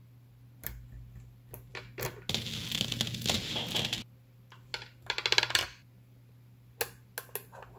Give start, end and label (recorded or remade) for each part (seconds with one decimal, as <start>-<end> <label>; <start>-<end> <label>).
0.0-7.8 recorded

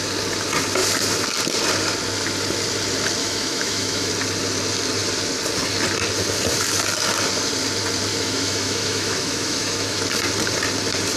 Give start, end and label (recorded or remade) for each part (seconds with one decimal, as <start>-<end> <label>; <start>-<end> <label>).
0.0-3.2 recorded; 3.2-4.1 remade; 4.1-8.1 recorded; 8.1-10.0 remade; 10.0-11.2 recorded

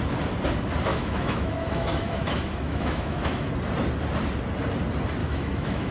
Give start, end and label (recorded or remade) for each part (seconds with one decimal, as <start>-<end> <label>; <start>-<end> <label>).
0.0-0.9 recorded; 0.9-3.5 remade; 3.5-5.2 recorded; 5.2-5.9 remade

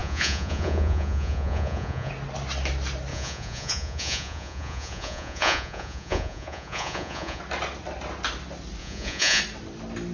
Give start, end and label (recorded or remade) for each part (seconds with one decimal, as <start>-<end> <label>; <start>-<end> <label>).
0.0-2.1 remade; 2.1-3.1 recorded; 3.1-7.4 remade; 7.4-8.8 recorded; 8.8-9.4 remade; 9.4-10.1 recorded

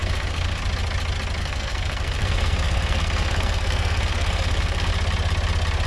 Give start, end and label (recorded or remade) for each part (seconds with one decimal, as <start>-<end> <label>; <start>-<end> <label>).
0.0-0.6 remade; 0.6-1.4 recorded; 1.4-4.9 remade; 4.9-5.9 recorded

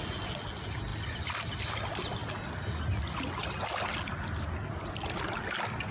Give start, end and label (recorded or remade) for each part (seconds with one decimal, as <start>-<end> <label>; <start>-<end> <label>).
0.0-5.9 recorded

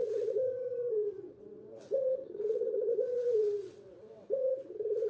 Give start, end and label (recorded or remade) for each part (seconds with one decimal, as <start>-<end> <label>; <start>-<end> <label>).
0.0-5.1 remade

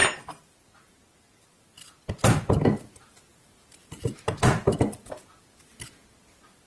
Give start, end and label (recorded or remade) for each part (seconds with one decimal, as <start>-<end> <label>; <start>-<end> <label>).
0.0-3.3 recorded; 3.3-4.2 remade; 4.2-6.7 recorded